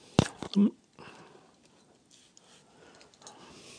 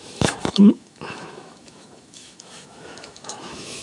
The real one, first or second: first